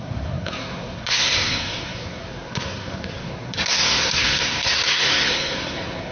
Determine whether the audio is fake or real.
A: fake